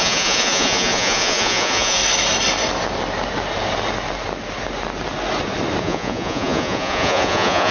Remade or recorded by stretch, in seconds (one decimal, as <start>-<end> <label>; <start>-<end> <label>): 0.0-2.0 remade; 2.0-5.8 recorded; 5.8-7.7 remade